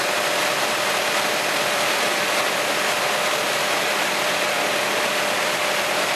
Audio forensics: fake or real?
real